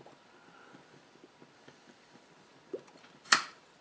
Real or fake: real